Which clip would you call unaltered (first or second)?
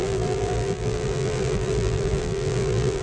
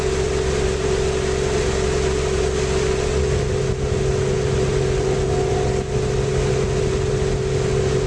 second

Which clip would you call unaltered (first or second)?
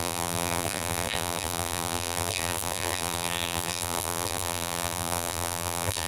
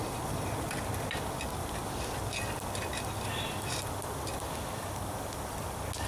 second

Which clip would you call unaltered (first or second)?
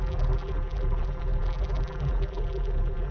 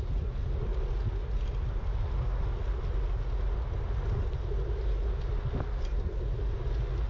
second